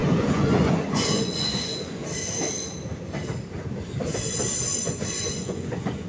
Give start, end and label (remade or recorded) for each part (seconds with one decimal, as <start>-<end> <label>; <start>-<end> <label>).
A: 0.0-2.0 remade; 2.0-4.8 recorded; 4.8-6.1 remade